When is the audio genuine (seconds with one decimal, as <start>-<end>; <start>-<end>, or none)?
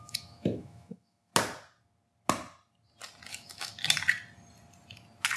1.3-3.3; 3.7-5.4